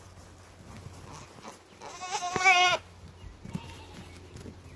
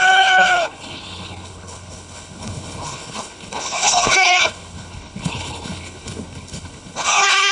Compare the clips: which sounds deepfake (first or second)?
second